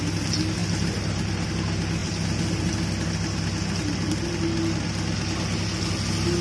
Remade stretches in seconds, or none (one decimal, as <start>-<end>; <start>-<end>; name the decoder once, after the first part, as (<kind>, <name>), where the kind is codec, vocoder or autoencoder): 0.6-1.5 (vocoder, BigVGAN v2); 2.0-2.6